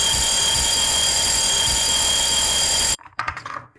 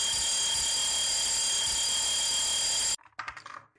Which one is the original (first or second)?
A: second